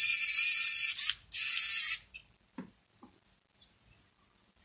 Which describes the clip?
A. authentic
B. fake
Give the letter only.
A